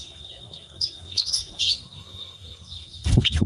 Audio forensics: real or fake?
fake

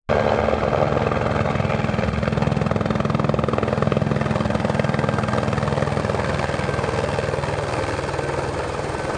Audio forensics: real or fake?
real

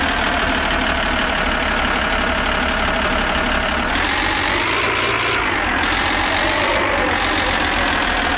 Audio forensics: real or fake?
real